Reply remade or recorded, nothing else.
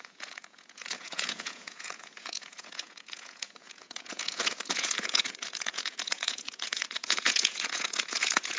remade